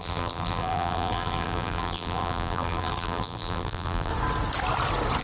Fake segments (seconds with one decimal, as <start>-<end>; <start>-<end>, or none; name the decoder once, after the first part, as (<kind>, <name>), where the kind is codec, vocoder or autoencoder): 0.0-4.1 (vocoder, BigVGAN v2)